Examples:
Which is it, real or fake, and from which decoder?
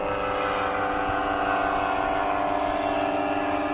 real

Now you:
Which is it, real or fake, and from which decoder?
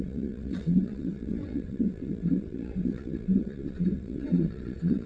fake, vocoder, WaveNeXt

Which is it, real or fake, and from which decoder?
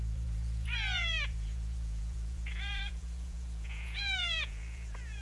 fake, vocoder, Vocos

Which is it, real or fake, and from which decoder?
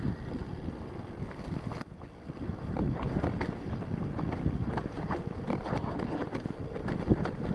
real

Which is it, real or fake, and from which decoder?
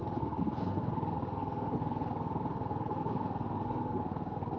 fake, codec, SNAC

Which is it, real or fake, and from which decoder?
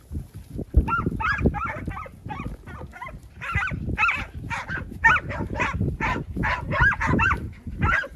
real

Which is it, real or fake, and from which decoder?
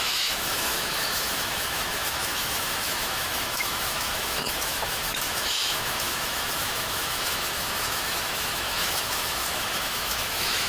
fake, autoencoder, DAC-VAE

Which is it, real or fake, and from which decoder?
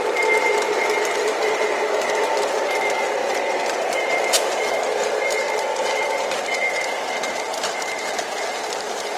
fake, vocoder, BigVGAN v2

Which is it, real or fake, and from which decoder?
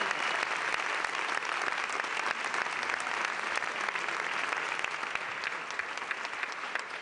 real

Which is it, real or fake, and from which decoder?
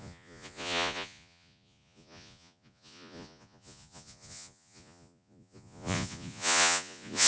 fake, vocoder, Vocos